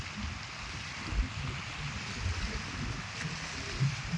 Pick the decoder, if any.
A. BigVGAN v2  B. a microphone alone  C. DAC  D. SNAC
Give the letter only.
B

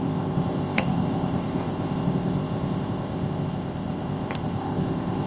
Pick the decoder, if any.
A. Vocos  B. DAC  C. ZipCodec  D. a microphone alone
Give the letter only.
C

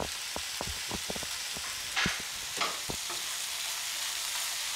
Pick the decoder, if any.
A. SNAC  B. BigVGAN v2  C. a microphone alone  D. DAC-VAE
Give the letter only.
C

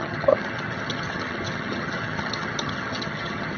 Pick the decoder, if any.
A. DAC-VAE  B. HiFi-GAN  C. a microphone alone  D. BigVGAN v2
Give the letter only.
B